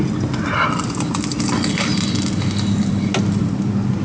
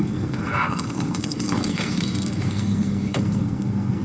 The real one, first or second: first